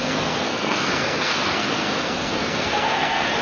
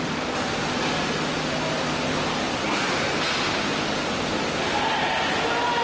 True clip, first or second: second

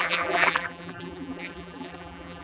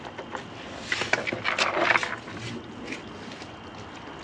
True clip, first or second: second